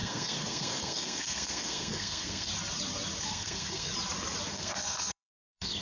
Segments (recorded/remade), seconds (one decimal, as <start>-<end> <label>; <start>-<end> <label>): 0.0-2.5 remade; 2.5-3.2 recorded; 3.2-3.9 remade; 3.9-4.5 recorded; 4.5-5.8 remade